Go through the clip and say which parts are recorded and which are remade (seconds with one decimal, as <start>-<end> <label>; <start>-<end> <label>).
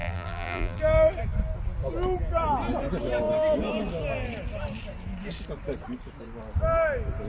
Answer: 0.0-0.8 remade; 0.8-7.3 recorded